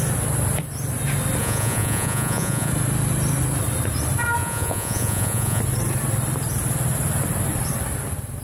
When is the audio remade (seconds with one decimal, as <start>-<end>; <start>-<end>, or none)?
1.4-2.7; 4.4-5.6